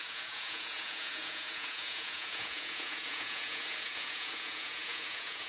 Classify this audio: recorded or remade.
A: remade